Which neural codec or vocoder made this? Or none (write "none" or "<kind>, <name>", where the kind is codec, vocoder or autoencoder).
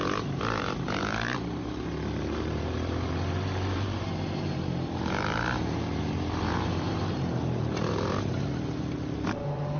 vocoder, BigVGAN v2